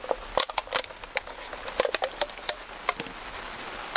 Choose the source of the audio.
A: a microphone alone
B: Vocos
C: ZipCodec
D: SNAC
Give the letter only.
A